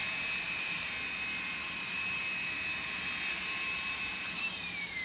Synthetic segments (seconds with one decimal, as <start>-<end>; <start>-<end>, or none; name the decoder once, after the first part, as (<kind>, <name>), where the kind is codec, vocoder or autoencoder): 0.0-5.0 (vocoder, BigVGAN v2)